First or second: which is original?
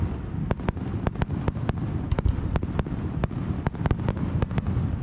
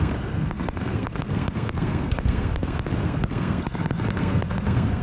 first